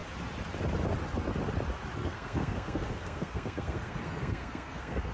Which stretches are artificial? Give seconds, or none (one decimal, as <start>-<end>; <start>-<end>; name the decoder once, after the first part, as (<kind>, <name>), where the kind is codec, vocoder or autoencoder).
2.0-5.1 (codec, SNAC)